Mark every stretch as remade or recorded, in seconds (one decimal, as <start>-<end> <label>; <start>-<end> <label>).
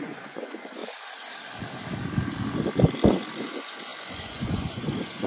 0.0-0.8 remade; 0.8-3.1 recorded; 3.1-5.3 remade